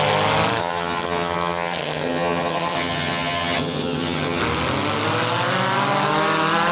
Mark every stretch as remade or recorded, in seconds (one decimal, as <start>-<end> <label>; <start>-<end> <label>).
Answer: 0.0-0.6 recorded; 0.6-4.4 remade; 4.4-6.7 recorded